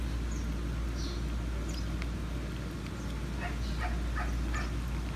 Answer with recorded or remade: recorded